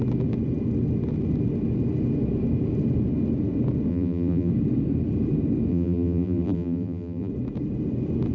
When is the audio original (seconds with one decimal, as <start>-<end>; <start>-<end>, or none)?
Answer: 0.0-3.9; 4.5-5.7; 7.3-8.3

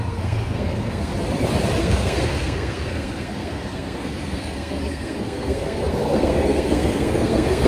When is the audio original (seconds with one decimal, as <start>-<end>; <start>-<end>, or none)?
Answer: 1.1-1.8